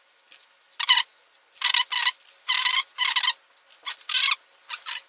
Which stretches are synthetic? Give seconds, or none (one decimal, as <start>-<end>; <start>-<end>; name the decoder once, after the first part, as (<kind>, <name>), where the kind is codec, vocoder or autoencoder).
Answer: none